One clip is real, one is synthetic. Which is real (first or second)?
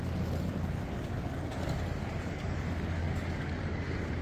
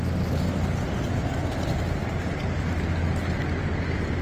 second